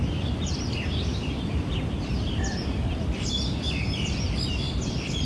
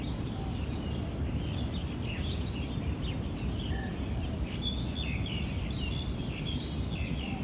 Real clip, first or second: second